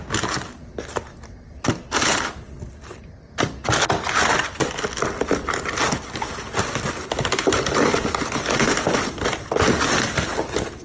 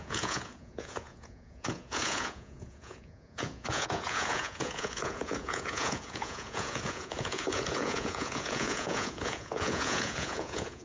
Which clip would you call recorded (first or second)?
first